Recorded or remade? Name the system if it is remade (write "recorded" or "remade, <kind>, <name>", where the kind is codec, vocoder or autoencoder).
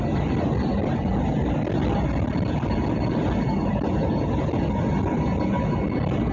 recorded